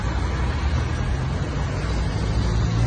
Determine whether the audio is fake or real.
real